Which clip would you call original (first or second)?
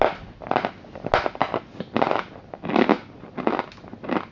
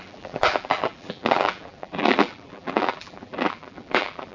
first